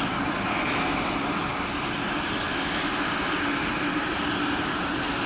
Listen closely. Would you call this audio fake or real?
real